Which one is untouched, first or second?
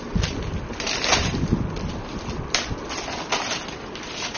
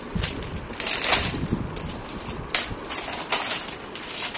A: first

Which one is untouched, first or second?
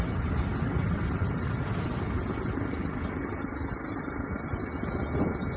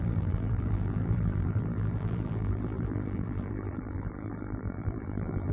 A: first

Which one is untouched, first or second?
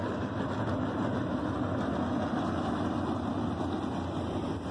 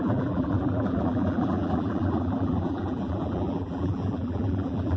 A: first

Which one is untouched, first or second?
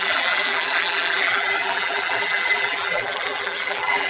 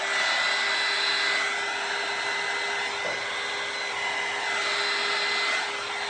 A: second